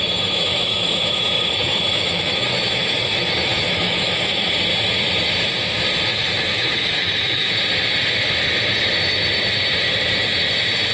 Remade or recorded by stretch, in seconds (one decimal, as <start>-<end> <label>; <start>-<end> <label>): 0.0-0.5 recorded; 0.5-4.5 remade; 4.5-6.1 recorded; 6.1-7.5 remade; 7.5-10.9 recorded